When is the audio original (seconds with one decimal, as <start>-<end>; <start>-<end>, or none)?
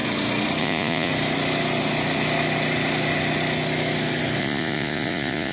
0.0-0.6; 1.1-4.4